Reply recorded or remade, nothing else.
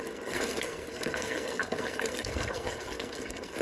remade